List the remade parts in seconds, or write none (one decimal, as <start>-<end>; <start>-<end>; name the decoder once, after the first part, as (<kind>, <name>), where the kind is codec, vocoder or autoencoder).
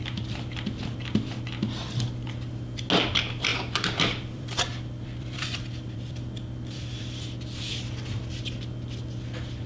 3.5-7.7 (vocoder, BigVGAN v2)